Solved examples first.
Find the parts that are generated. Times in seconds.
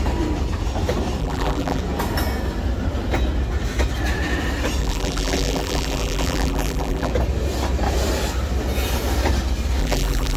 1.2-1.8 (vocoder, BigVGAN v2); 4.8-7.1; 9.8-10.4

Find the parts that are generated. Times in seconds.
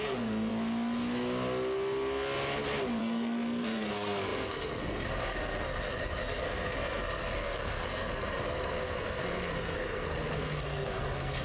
0.0-0.5 (codec, SNAC); 3.0-11.4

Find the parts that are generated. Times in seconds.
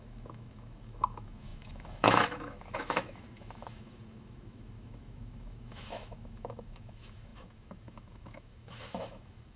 0.0-9.6 (autoencoder, DAC-VAE)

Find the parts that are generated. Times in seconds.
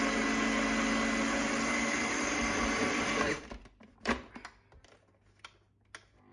1.7-4.3 (vocoder, BigVGAN v2)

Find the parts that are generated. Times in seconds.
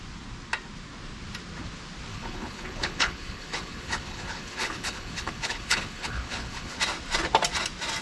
2.1-6.8 (codec, HILCodec)